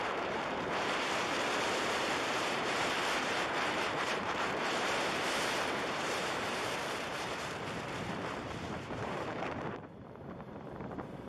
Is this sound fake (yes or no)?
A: yes